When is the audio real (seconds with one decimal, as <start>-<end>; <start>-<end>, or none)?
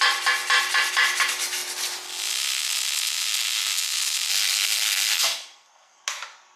0.0-4.3; 6.0-6.6